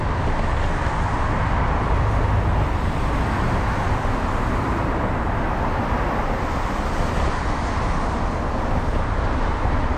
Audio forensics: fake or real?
real